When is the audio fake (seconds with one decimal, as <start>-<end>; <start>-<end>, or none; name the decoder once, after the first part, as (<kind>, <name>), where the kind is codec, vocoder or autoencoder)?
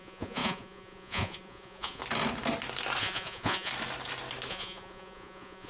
0.0-2.0 (vocoder, Vocos); 3.0-3.7; 4.5-5.7